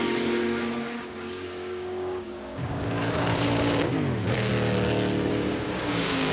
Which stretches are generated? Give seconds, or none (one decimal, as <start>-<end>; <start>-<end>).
0.0-4.5; 5.3-6.3